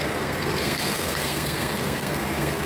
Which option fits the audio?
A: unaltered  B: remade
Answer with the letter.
B